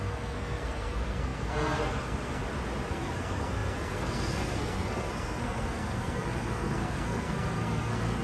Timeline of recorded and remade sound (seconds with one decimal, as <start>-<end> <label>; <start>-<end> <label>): 0.0-2.4 remade; 2.4-2.9 recorded; 2.9-8.2 remade